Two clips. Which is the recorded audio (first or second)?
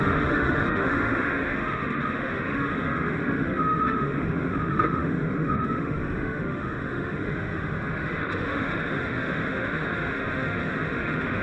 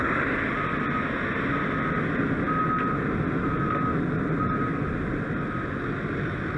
second